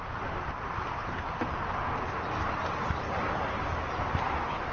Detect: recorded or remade recorded